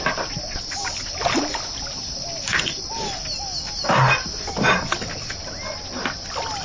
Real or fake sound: real